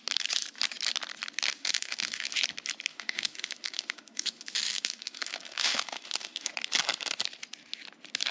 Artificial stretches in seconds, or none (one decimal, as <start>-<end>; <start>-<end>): 1.6-2.4; 2.9-6.5